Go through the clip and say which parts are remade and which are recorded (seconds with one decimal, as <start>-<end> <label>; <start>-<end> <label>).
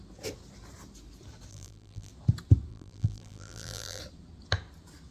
0.0-1.5 recorded; 1.5-2.1 remade; 2.1-2.7 recorded; 2.7-4.0 remade; 4.0-5.1 recorded